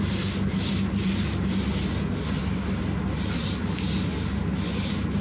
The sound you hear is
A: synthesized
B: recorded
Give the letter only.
B